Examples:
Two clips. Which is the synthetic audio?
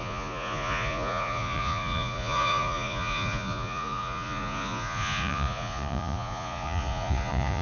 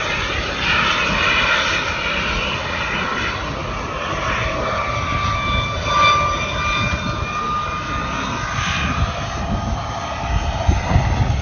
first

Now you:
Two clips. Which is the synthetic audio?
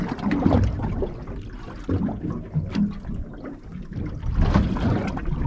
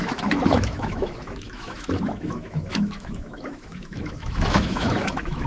second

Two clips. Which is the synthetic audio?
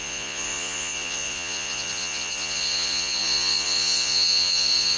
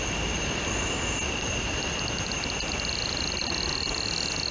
first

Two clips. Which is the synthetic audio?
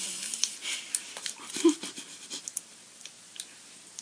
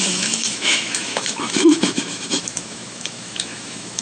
second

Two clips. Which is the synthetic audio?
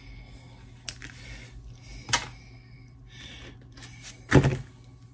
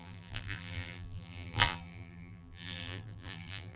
second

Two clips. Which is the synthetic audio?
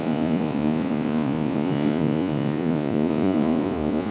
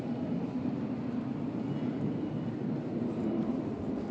first